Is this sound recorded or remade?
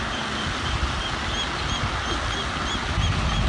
recorded